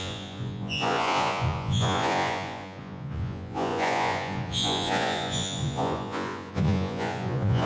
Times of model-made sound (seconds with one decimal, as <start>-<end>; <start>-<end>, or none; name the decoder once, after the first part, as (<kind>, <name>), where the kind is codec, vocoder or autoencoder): 0.0-7.7 (vocoder, Vocos)